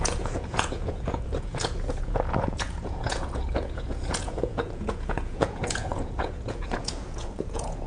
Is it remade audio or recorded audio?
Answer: remade